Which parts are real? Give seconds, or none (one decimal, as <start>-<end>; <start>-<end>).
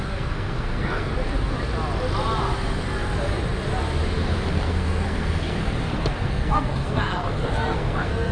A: 1.1-4.5